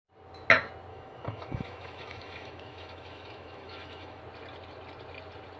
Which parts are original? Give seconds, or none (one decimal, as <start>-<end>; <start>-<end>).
0.0-0.9; 4.2-5.6